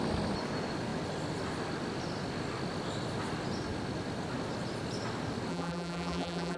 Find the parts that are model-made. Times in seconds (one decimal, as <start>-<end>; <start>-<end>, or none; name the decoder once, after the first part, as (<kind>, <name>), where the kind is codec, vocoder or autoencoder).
5.5-6.6 (vocoder, BigVGAN v2)